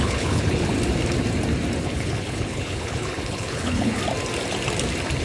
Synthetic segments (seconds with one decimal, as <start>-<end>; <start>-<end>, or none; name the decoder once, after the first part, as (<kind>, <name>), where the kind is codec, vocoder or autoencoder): 0.0-0.7 (codec, HILCodec); 1.8-4.0